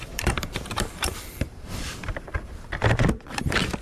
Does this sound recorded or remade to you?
remade